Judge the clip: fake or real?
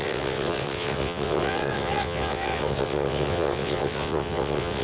fake